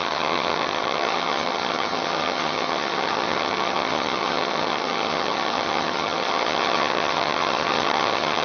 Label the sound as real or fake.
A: fake